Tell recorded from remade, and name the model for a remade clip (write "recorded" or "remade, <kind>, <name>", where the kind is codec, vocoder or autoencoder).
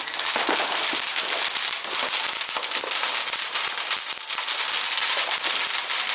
recorded